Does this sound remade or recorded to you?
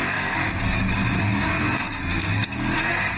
remade